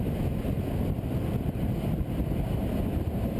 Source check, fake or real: real